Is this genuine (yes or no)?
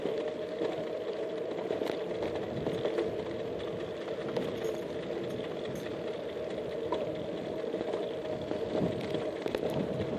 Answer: yes